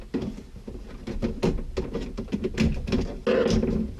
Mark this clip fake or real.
real